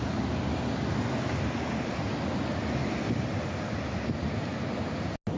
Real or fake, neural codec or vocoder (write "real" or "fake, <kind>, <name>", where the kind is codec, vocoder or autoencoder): real